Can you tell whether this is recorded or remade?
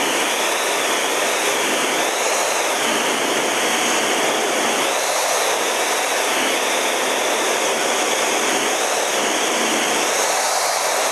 recorded